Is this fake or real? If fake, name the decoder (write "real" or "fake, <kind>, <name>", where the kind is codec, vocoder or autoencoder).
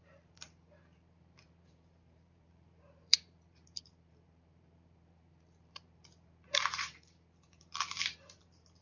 fake, vocoder, BigVGAN v2